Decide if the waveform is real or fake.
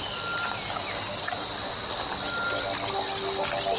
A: real